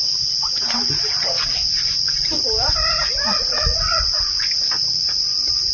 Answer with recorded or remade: remade